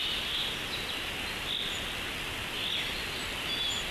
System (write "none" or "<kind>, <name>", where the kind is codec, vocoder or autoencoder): none